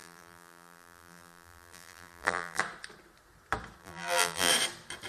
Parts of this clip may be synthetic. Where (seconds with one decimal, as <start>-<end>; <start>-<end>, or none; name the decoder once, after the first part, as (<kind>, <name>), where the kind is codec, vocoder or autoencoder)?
0.0-2.6 (vocoder, BigVGAN v2); 3.8-4.5